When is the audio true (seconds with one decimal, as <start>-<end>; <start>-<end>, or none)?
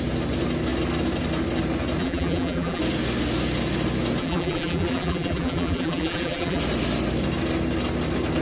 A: 0.0-2.0; 2.8-4.2; 6.6-8.4